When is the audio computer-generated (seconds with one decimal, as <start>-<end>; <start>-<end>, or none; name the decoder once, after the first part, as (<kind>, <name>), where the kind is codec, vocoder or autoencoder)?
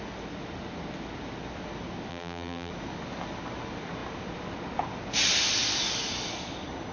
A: 2.1-2.7 (vocoder, BigVGAN v2)